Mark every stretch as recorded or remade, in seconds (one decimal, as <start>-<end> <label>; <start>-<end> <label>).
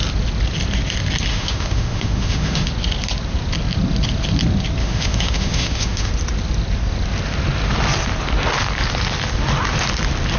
0.0-1.3 recorded; 1.3-2.7 remade; 2.7-4.8 recorded; 4.8-6.1 remade; 6.1-10.4 recorded